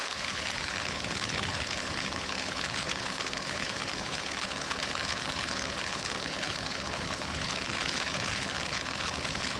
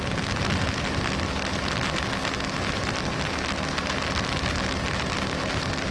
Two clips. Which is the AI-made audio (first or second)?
first